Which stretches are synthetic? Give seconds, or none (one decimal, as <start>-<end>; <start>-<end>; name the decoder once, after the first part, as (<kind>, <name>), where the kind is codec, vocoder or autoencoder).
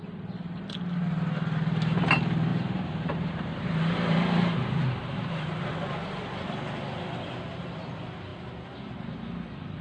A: 2.5-5.6 (vocoder, BigVGAN v2)